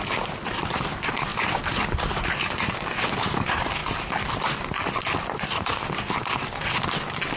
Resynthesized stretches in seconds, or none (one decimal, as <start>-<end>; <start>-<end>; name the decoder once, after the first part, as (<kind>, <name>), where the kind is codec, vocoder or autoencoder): none